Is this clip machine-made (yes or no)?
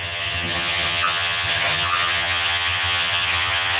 yes